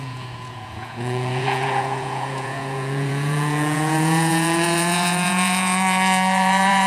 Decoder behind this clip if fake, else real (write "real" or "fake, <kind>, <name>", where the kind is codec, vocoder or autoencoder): fake, vocoder, Vocos